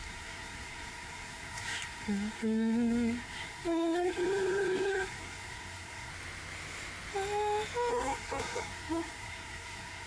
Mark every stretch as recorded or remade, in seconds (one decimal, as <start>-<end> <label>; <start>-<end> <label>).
0.0-6.1 remade; 6.1-7.9 recorded; 7.9-10.1 remade